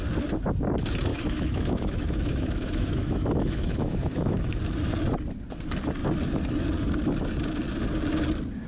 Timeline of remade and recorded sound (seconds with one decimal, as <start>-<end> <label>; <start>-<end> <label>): 0.0-1.1 recorded; 1.1-4.6 remade; 4.6-8.7 recorded